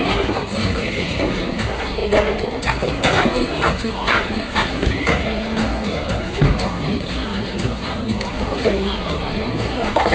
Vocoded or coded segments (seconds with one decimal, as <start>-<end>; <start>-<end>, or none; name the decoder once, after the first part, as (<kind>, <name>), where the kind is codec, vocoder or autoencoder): 0.0-10.1 (codec, SNAC)